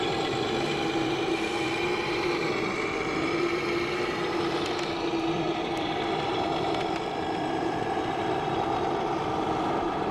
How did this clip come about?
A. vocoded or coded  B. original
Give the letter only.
A